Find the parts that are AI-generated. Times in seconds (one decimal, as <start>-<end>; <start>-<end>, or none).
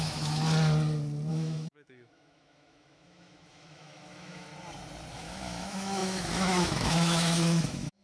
0.0-0.4; 1.3-4.5; 5.1-8.0